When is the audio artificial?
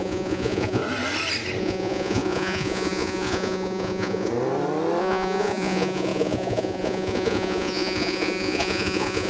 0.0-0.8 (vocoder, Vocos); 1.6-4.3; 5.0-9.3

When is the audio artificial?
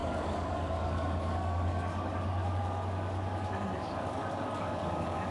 0.0-5.3 (codec, DAC)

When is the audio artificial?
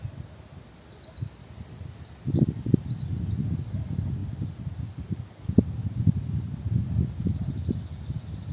none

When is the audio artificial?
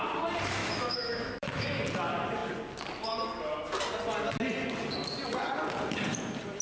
0.6-1.8 (autoencoder, DAC-VAE)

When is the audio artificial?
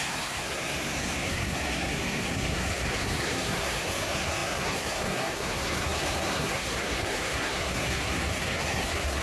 0.0-9.2 (codec, SNAC)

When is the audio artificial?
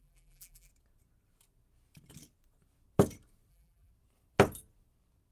0.0-0.7 (vocoder, BigVGAN v2); 3.5-3.9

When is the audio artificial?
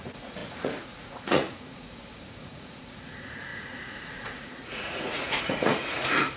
0.0-6.4 (vocoder, Vocos)